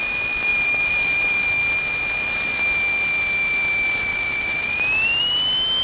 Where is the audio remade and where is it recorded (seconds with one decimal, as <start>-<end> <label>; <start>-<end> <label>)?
0.0-0.5 recorded; 0.5-1.6 remade; 1.6-4.1 recorded; 4.1-5.2 remade; 5.2-5.8 recorded